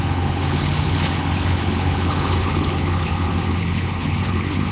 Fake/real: fake